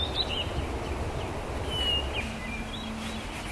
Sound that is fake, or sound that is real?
real